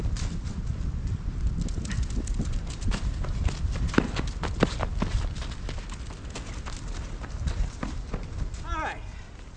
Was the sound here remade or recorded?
recorded